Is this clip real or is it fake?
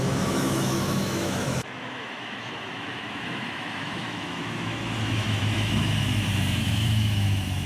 fake